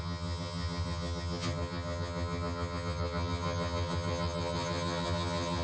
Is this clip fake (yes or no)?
yes